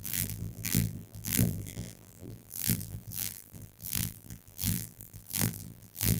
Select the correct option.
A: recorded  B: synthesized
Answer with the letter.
B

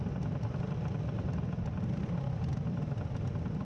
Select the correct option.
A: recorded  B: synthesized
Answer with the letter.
B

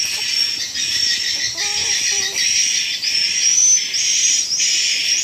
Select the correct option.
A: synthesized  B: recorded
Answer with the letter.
B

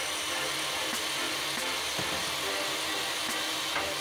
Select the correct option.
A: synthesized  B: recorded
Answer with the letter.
B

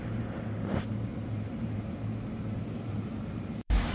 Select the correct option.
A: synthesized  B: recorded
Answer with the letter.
A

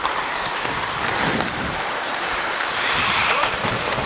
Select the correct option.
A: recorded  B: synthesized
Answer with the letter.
B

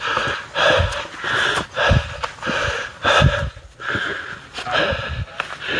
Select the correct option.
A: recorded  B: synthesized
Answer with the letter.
A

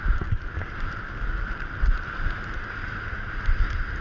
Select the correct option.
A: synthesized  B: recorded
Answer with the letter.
B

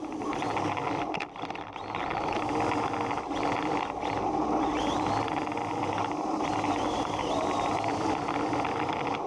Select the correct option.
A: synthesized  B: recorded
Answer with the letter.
B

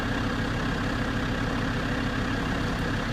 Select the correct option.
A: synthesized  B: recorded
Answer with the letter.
B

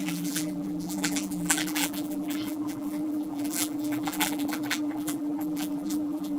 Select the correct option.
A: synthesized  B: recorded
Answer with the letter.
A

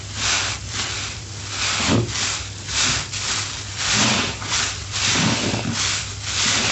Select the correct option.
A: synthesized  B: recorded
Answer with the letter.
A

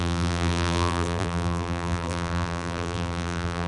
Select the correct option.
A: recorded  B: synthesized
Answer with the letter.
B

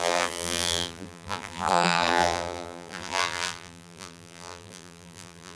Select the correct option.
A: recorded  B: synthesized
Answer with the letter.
B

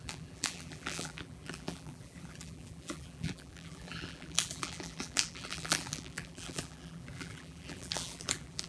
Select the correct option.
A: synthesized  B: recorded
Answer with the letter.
A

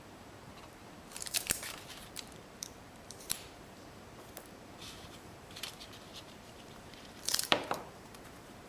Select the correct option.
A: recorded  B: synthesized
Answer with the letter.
B